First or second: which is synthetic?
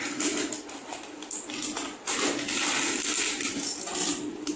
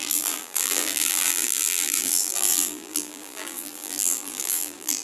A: second